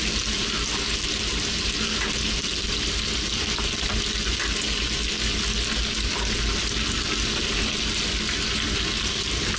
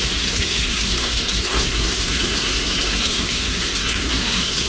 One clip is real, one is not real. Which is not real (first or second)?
second